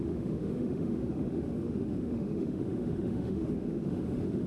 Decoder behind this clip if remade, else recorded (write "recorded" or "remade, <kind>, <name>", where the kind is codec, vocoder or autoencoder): remade, autoencoder, DAC-VAE